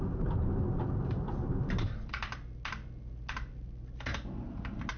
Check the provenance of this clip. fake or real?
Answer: real